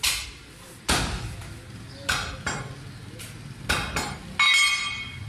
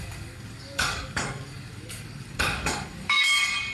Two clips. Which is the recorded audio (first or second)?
first